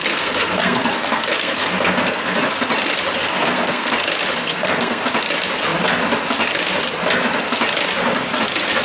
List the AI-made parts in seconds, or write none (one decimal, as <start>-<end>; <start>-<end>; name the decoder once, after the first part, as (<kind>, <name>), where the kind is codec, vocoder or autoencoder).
0.0-2.4 (codec, SNAC); 3.2-3.9; 4.4-5.0